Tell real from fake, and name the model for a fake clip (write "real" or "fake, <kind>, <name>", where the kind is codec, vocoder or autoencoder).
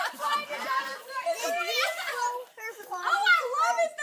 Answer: fake, vocoder, BigVGAN v2